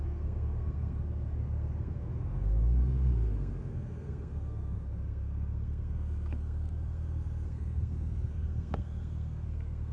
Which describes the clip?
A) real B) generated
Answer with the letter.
B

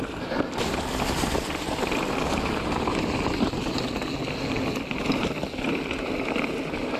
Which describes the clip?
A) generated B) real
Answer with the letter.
B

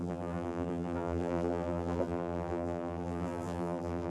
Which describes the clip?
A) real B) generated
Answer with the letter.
B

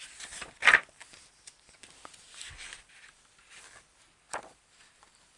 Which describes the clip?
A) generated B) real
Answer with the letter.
B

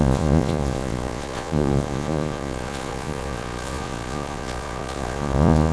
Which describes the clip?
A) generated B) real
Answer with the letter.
A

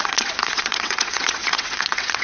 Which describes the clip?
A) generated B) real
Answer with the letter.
A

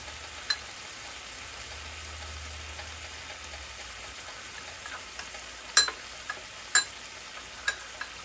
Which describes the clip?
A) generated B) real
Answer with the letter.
B